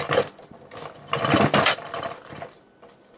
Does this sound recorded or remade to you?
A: recorded